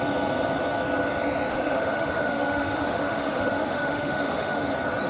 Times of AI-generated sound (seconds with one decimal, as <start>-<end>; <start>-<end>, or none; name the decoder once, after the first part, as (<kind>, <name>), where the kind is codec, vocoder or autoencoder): 1.5-4.6 (autoencoder, DAC-VAE)